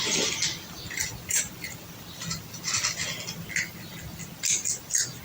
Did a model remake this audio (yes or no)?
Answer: no